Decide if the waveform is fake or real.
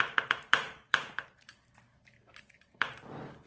fake